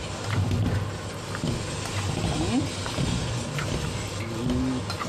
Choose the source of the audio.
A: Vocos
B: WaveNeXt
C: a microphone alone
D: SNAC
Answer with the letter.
C